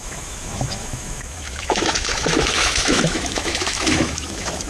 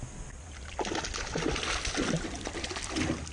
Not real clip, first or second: first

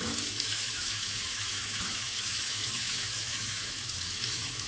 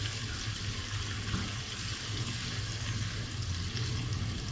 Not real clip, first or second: first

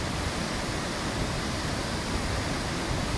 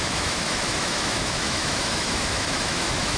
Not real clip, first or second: second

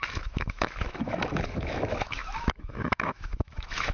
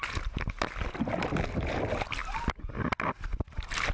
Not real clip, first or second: first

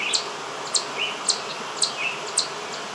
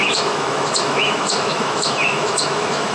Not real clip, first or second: second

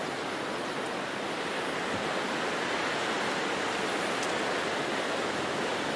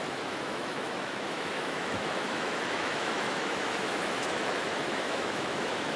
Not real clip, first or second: second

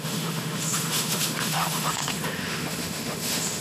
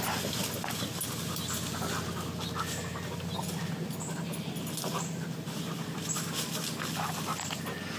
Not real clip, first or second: first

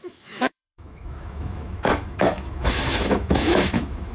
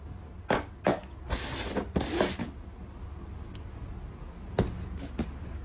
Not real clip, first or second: first